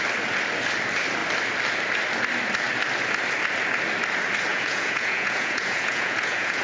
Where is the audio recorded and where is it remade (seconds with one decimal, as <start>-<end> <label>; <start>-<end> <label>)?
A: 0.0-4.5 recorded; 4.5-6.6 remade